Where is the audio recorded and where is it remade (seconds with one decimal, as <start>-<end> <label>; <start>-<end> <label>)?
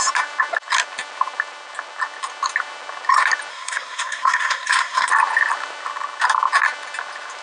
0.0-3.5 recorded; 3.5-5.1 remade; 5.1-7.4 recorded